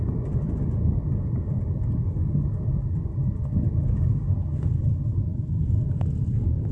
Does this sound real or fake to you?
real